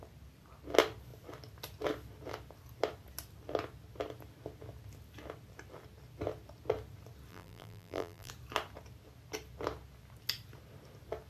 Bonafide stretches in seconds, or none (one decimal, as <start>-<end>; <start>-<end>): 0.0-7.3; 8.3-11.3